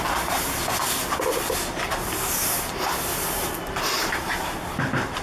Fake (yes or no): no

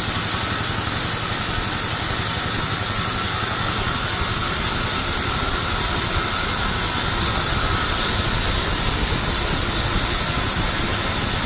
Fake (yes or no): no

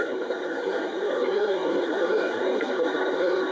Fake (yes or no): yes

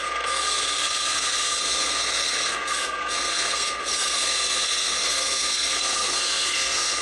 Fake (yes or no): yes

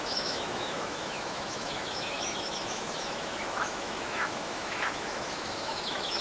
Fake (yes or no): yes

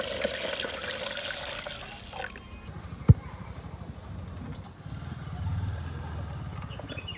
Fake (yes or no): no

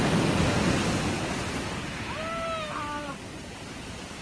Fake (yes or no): no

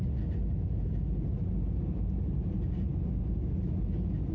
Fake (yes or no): no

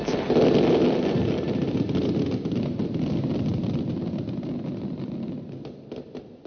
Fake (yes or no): no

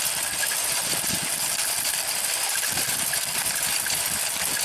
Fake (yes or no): no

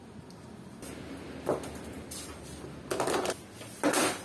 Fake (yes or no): no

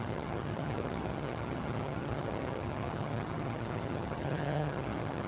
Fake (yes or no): yes